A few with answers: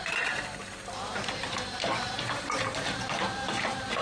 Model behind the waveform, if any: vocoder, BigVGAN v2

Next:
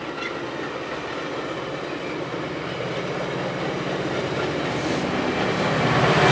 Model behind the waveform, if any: none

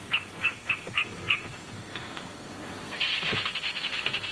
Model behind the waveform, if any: codec, SNAC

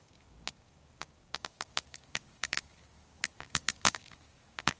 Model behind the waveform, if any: codec, DAC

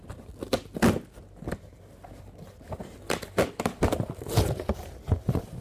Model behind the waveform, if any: none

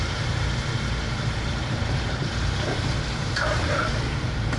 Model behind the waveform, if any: vocoder, BigVGAN v2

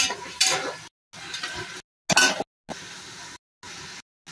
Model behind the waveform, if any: none